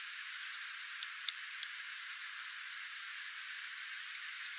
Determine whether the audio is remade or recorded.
remade